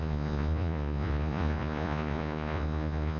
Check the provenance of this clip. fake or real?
fake